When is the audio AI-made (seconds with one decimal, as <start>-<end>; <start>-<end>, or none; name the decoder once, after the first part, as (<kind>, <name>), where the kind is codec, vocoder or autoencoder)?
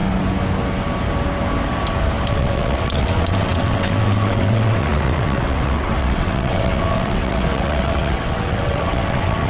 2.3-9.5 (vocoder, WaveNeXt)